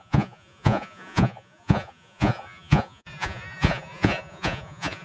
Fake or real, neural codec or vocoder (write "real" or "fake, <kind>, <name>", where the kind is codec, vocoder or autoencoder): fake, vocoder, Vocos